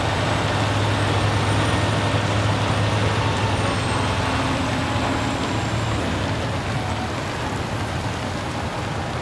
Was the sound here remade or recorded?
recorded